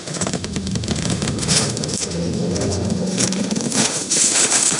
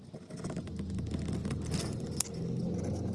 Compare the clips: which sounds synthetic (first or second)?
first